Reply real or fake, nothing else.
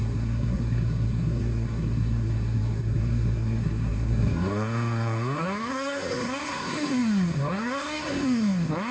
fake